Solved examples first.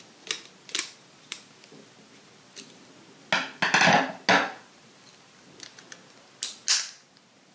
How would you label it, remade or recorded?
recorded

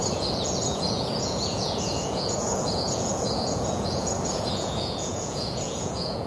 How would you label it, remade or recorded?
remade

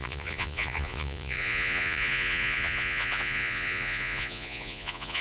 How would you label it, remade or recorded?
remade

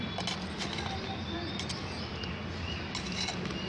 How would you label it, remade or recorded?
recorded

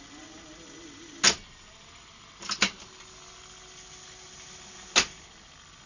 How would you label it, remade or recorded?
recorded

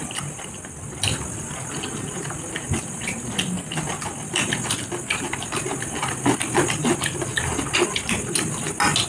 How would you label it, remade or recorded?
recorded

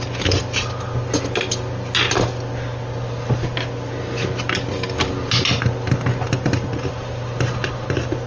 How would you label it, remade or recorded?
recorded